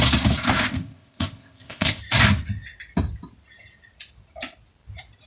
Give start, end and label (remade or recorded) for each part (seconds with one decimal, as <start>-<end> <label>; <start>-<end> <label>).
0.0-0.7 recorded; 0.7-2.0 remade; 2.0-5.3 recorded